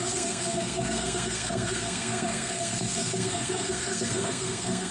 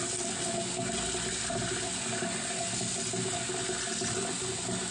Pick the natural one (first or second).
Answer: second